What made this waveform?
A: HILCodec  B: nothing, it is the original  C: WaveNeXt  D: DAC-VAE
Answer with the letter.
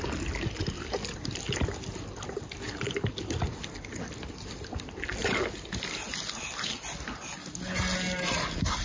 B